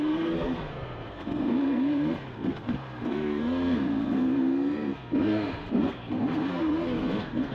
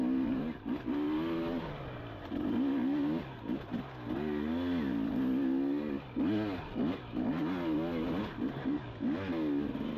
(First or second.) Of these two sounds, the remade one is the first